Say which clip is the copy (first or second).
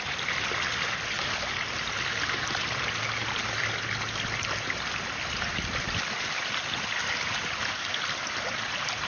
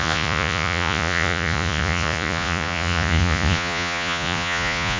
second